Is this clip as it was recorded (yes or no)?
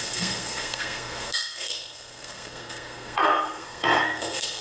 no